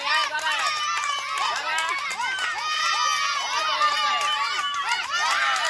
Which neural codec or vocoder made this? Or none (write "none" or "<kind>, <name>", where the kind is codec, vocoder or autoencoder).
none